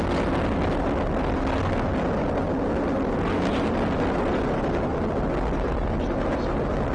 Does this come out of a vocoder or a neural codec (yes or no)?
no